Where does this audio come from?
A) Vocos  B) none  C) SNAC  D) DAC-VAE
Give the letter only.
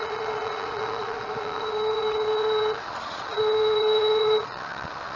A